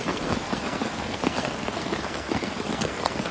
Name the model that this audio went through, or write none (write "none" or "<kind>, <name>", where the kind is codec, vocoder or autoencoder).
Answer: codec, SNAC